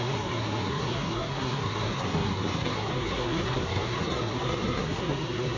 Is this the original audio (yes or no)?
no